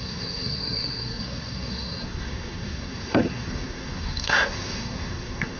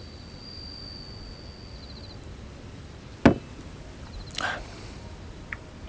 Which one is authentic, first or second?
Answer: second